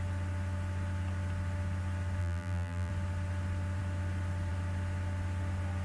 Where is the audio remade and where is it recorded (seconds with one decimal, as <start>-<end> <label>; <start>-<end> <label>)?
0.0-2.2 recorded; 2.2-2.9 remade; 2.9-5.8 recorded